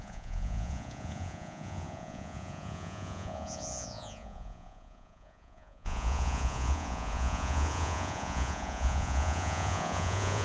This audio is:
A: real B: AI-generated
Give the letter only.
B